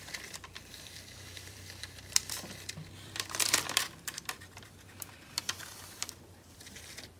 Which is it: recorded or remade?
remade